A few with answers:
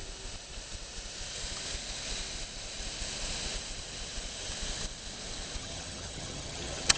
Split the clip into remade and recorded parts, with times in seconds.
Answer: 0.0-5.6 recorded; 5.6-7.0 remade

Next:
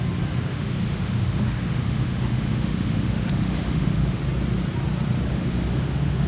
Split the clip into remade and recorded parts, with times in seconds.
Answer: 0.0-0.4 recorded; 0.4-4.2 remade; 4.2-5.3 recorded; 5.3-6.3 remade

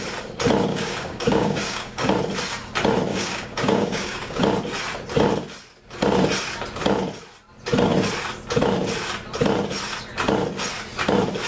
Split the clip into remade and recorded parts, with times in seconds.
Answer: 0.0-0.7 recorded; 0.7-2.1 remade; 2.1-3.1 recorded; 3.1-4.4 remade; 4.4-11.5 recorded

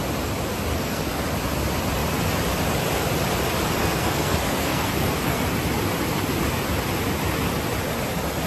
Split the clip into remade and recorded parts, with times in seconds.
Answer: 0.0-0.7 recorded; 0.7-1.2 remade; 1.2-3.8 recorded; 3.8-5.4 remade; 5.4-8.5 recorded

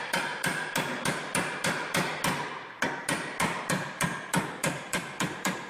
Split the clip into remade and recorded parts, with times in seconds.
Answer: 0.0-0.5 remade; 0.5-3.9 recorded; 3.9-5.7 remade

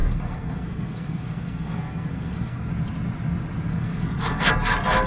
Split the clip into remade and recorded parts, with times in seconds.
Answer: 0.0-2.7 remade; 2.7-3.7 recorded; 3.7-4.5 remade; 4.5-5.1 recorded

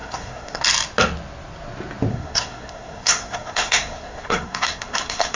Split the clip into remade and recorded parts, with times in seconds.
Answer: 0.0-0.6 remade; 0.6-2.1 recorded; 2.1-5.4 remade